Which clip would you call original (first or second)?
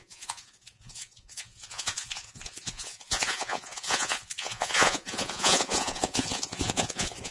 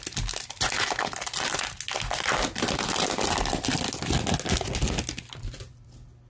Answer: second